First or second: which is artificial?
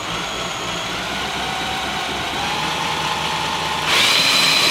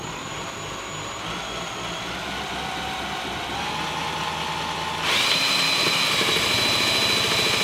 first